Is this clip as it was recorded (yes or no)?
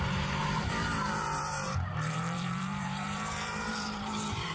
no